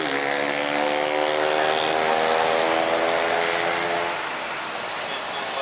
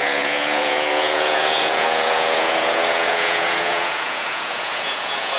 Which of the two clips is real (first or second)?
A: first